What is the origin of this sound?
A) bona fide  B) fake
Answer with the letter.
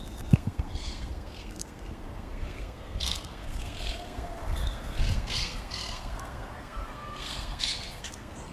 B